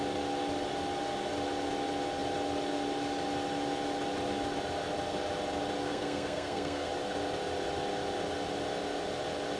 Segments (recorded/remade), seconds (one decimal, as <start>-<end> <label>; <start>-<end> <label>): 0.0-5.9 recorded; 5.9-6.9 remade; 6.9-9.6 recorded